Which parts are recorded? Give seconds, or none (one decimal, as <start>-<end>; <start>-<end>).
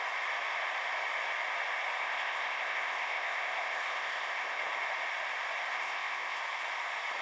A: 0.0-2.0; 4.6-5.7; 6.4-7.2